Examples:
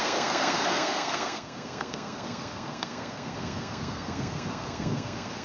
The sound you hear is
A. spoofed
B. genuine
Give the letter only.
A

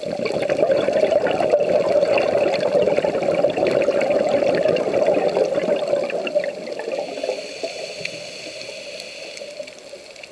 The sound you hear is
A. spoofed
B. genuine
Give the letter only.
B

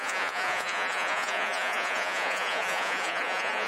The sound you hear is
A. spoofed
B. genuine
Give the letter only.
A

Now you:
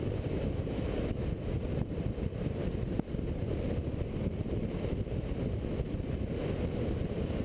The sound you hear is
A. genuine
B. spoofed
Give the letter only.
A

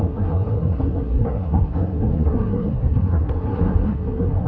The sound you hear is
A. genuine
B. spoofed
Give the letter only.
B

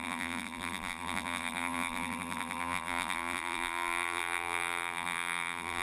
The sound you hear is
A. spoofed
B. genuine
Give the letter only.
A